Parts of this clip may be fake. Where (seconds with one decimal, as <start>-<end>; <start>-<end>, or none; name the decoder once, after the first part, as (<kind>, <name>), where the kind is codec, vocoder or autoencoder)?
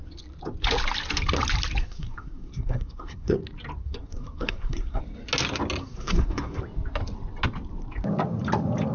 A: 1.8-3.4 (codec, SNAC); 3.8-5.0; 5.8-6.6